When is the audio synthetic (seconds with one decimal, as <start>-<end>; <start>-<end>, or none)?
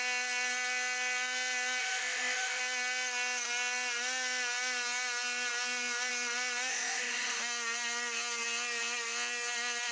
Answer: 1.8-2.6; 6.7-7.4